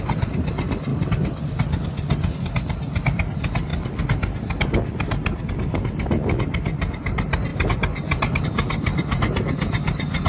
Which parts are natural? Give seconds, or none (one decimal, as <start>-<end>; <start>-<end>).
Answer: 0.0-10.3